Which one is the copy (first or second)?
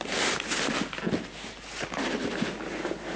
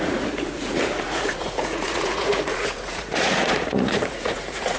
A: second